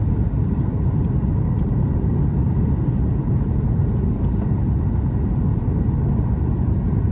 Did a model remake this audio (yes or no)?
no